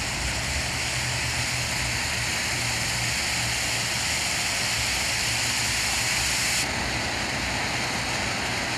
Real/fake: real